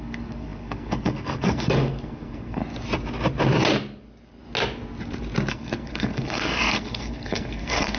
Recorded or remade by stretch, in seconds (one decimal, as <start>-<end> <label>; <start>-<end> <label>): 0.0-2.6 remade; 2.6-5.5 recorded; 5.5-8.0 remade